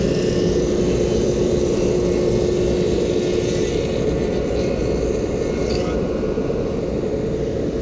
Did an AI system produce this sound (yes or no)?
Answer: no